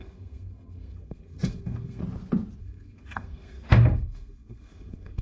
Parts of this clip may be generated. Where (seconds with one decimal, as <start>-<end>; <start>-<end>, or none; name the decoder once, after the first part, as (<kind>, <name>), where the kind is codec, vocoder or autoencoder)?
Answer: 0.0-2.0 (codec, SNAC); 2.6-5.2